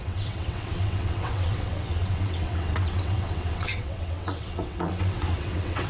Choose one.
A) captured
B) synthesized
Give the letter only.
B